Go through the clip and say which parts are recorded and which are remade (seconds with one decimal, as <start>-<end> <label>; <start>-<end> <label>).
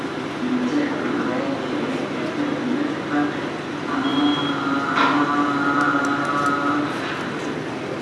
0.0-8.0 recorded